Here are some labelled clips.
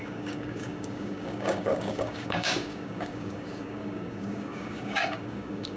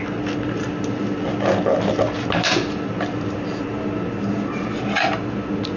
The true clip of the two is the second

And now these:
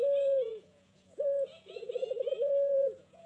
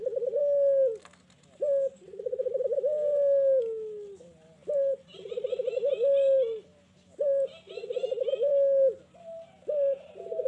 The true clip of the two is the second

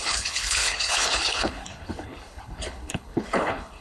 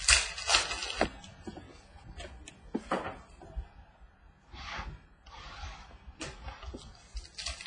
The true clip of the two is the second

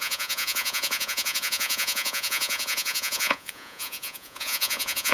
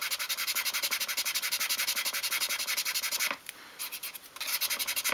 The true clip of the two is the second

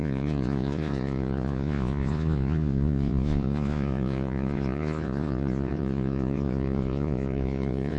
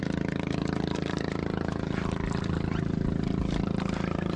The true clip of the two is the second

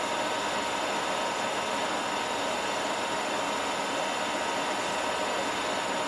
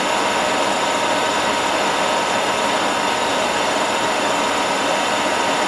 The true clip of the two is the first